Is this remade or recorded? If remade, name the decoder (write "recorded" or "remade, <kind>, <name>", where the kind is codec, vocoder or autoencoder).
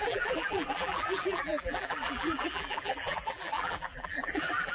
remade, vocoder, BigVGAN v2